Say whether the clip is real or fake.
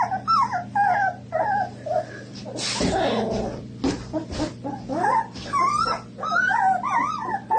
real